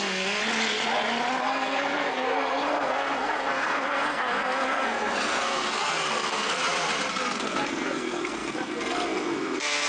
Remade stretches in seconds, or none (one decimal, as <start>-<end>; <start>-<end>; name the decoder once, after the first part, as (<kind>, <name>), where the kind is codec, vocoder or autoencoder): 0.0-0.4 (codec, SNAC); 1.4-6.6; 7.1-9.9